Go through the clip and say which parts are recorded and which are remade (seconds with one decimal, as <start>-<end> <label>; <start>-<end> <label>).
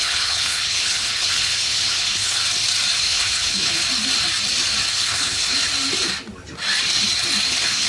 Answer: 0.0-2.4 remade; 2.4-3.0 recorded; 3.0-3.8 remade; 3.8-4.9 recorded; 4.9-5.6 remade; 5.6-7.5 recorded; 7.5-7.9 remade